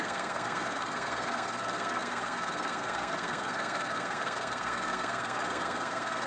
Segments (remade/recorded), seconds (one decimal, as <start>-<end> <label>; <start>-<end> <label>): 0.0-6.3 remade